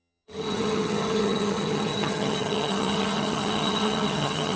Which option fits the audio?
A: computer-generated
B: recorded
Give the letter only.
A